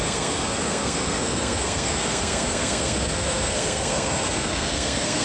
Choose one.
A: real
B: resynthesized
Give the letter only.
B